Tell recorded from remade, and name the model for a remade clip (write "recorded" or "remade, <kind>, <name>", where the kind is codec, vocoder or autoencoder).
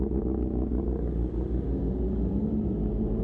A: recorded